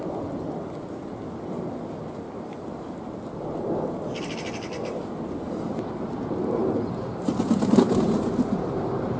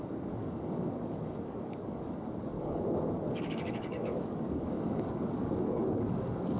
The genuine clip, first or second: first